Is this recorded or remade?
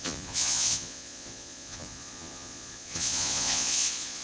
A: remade